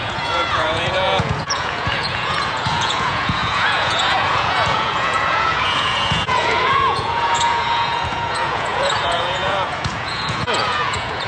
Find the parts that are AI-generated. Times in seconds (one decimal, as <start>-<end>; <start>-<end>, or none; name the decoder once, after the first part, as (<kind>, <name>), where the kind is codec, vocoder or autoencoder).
0.0-11.3 (vocoder, Vocos)